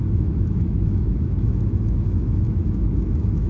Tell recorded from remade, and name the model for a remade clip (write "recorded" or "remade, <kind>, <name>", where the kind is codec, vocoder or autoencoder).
remade, autoencoder, DAC-VAE